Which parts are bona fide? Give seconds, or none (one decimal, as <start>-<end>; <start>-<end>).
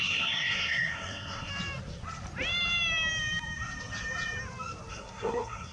1.5-4.9